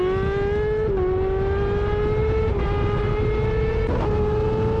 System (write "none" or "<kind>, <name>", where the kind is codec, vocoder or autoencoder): none